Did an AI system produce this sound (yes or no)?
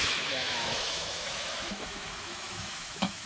yes